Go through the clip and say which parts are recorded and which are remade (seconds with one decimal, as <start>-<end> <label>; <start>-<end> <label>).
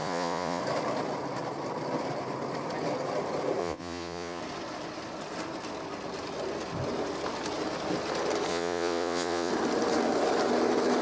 0.0-0.6 remade; 0.6-3.6 recorded; 3.6-4.4 remade; 4.4-8.5 recorded; 8.5-9.5 remade; 9.5-11.0 recorded